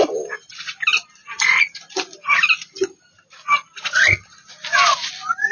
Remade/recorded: recorded